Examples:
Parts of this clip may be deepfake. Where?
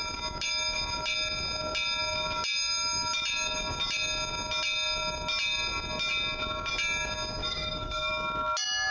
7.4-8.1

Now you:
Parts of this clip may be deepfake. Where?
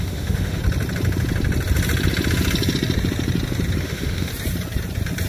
0.0-0.6; 3.8-4.3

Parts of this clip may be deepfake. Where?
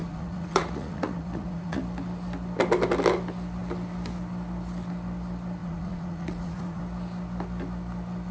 0.0-1.8; 5.6-6.8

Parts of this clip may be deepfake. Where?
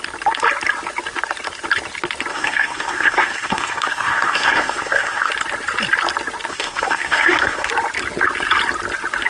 2.3-5.3; 6.5-7.7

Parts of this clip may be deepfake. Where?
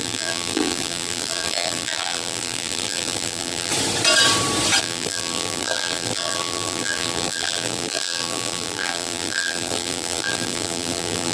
0.0-3.7; 4.8-11.3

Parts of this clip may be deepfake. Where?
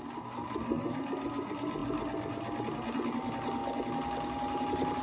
none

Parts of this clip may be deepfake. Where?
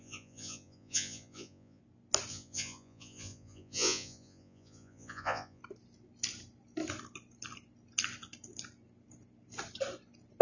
0.0-1.8; 2.3-5.6